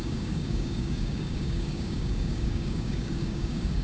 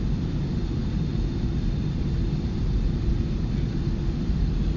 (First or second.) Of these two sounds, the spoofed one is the first